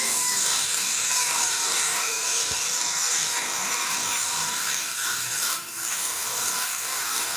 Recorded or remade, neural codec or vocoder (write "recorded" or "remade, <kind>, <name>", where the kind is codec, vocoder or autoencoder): remade, codec, DAC